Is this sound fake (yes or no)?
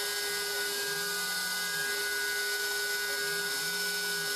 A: no